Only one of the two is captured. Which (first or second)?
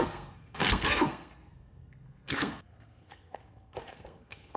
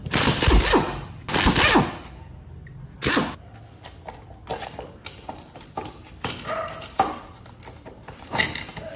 second